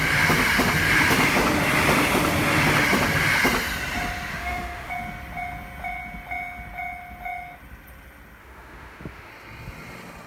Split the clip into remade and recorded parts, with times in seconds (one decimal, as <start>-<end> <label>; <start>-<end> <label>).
0.0-4.3 recorded; 4.3-4.9 remade; 4.9-8.4 recorded; 8.4-9.3 remade; 9.3-10.3 recorded